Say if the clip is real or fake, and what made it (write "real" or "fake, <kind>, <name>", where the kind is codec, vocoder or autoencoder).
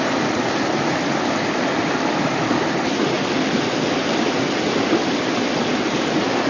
real